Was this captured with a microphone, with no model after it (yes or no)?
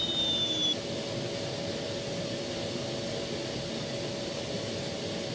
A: yes